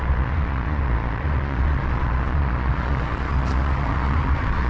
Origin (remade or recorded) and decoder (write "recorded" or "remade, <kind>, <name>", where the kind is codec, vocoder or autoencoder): remade, vocoder, Vocos